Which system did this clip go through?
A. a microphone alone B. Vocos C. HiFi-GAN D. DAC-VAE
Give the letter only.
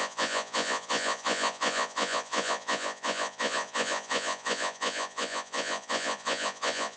B